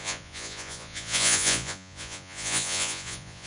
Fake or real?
fake